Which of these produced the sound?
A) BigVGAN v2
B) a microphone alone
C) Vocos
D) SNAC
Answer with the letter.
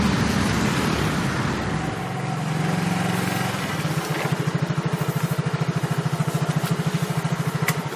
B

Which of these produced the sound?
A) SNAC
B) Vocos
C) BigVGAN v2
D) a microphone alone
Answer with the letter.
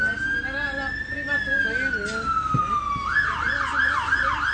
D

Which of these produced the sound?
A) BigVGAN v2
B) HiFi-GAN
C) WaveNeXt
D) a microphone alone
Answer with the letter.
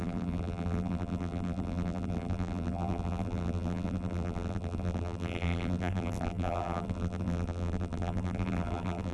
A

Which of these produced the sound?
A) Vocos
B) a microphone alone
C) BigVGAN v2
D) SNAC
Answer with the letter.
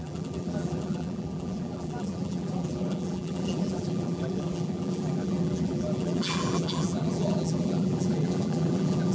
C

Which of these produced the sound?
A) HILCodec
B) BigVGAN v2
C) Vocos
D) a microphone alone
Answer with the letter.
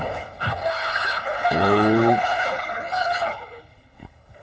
A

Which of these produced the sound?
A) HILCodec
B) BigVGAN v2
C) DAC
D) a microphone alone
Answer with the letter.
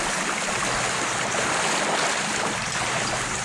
D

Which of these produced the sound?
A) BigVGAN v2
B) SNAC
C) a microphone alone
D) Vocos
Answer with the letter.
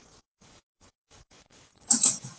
D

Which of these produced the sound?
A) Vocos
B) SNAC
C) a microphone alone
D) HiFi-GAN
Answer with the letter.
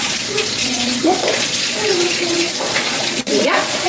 A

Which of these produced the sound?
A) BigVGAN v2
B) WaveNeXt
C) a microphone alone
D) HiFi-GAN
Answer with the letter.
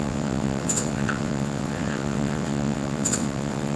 B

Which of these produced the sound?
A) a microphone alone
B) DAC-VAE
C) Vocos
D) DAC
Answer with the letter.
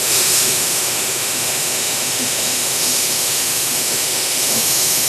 B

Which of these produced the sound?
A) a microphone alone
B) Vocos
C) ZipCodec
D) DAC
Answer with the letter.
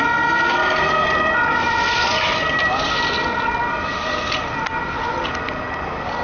A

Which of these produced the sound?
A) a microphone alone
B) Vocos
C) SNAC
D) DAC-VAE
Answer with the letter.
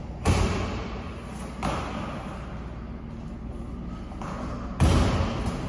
A